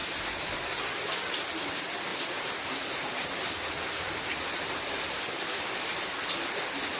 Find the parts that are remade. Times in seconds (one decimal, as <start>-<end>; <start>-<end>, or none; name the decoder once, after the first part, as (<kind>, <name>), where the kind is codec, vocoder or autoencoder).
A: 0.0-0.9 (vocoder, BigVGAN v2); 2.1-6.3